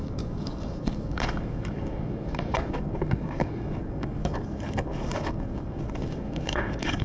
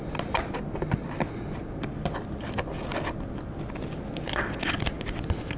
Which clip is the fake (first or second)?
first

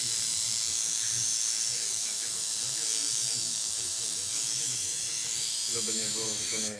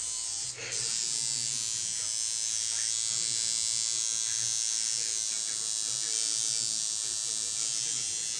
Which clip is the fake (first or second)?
first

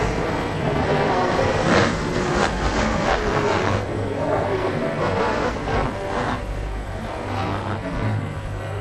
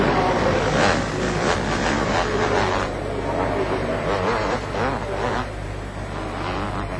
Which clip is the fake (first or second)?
first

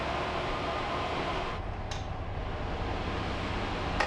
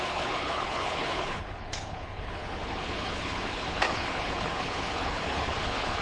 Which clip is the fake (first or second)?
second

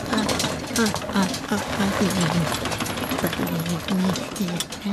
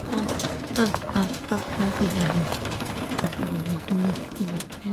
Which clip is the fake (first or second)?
second